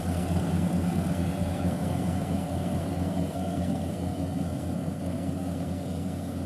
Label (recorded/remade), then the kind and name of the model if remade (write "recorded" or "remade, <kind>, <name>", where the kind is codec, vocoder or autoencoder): remade, codec, SNAC